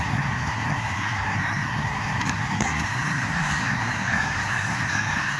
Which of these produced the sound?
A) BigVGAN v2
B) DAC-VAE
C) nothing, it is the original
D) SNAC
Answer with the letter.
D